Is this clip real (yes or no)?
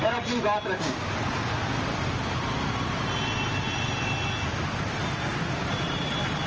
yes